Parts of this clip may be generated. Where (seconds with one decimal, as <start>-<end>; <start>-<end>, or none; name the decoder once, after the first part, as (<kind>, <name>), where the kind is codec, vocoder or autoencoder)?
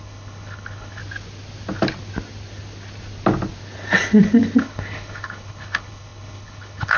0.0-1.0 (codec, HILCodec); 4.6-7.0